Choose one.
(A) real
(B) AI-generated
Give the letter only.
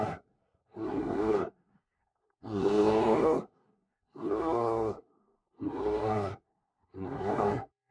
B